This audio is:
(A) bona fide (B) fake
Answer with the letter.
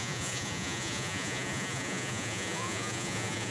B